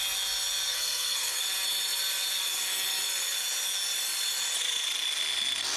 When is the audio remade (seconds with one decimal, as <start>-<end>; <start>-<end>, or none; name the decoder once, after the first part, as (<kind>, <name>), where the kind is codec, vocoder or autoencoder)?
0.7-1.4 (codec, SNAC)